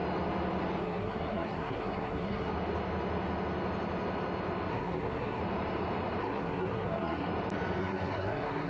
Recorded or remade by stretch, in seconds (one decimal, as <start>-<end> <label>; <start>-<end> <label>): 0.0-0.8 recorded; 0.8-2.5 remade; 2.5-4.7 recorded; 4.7-5.4 remade; 5.4-6.2 recorded; 6.2-7.3 remade; 7.3-7.8 recorded; 7.8-8.7 remade